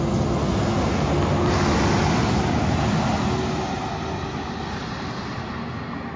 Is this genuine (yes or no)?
yes